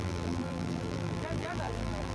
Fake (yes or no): yes